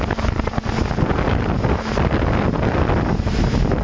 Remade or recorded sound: recorded